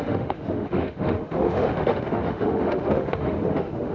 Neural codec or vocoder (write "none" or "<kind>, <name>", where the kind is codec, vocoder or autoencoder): autoencoder, DAC-VAE